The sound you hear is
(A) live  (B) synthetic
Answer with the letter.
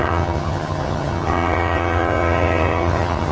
B